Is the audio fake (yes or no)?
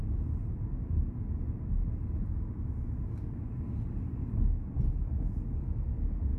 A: no